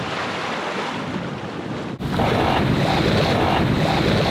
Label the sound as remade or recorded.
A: remade